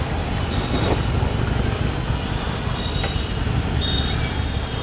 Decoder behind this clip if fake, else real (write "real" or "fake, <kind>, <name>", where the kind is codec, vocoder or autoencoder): real